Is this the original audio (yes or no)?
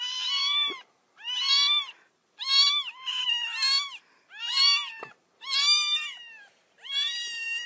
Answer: no